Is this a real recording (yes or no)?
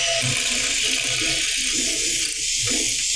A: yes